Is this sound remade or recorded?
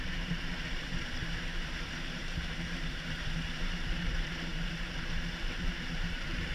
remade